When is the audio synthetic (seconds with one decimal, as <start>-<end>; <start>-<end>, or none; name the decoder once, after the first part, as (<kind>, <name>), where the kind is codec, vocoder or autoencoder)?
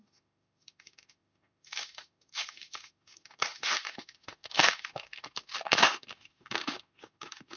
0.0-7.6 (autoencoder, DAC-VAE)